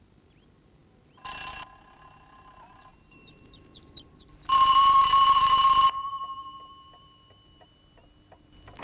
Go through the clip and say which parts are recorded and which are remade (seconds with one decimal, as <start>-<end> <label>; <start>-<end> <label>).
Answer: 0.0-2.9 recorded; 2.9-6.6 remade; 6.6-8.8 recorded

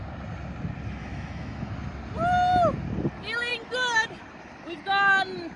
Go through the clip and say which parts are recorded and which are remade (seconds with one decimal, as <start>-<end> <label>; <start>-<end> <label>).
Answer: 0.0-1.0 recorded; 1.0-1.7 remade; 1.7-5.6 recorded

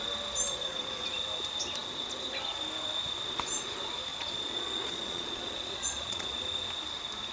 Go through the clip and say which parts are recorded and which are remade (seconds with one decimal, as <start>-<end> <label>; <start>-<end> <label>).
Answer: 0.0-4.1 recorded; 4.1-6.4 remade; 6.4-7.3 recorded

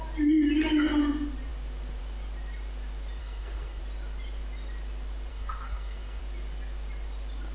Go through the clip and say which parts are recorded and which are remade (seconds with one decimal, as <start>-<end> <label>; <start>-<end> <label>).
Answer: 0.0-3.2 recorded; 3.2-3.8 remade; 3.8-5.3 recorded; 5.3-6.2 remade; 6.2-7.5 recorded

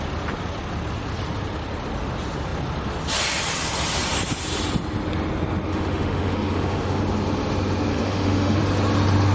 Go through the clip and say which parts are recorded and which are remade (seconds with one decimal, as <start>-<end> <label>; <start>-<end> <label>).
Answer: 0.0-5.7 recorded; 5.7-7.0 remade; 7.0-7.9 recorded; 7.9-8.6 remade; 8.6-9.3 recorded

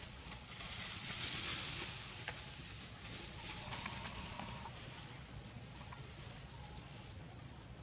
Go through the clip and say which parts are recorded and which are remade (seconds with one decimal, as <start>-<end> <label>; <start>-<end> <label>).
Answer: 0.0-1.5 remade; 1.5-3.2 recorded; 3.2-7.8 remade